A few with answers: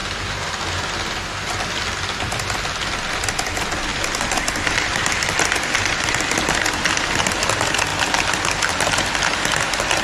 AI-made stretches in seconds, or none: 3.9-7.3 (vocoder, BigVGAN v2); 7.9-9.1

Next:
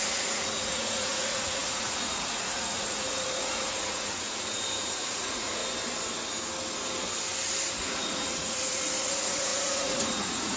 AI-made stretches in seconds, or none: 0.0-5.6 (vocoder, Vocos); 7.7-10.6

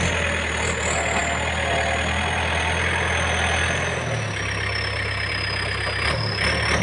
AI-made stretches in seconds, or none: none

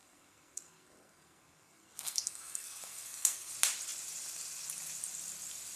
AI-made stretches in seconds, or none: 0.0-3.5 (codec, SNAC)

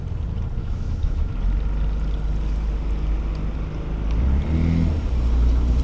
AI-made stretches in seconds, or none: 0.6-1.3 (autoencoder, DAC-VAE)

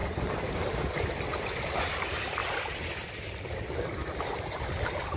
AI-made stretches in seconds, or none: 0.0-5.2 (vocoder, BigVGAN v2)